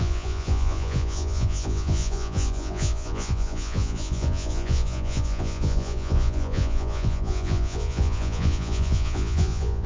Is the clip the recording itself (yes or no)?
no